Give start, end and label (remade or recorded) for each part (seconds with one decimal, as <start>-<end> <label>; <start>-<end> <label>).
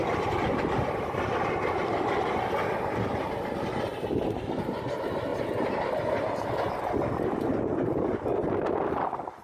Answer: 0.0-1.4 remade; 1.4-3.9 recorded; 3.9-4.7 remade; 4.7-9.4 recorded